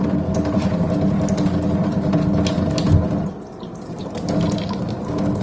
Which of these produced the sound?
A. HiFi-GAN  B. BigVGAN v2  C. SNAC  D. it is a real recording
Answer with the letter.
D